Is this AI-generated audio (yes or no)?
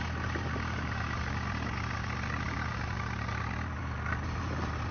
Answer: no